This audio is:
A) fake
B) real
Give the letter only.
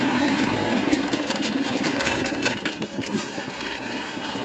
A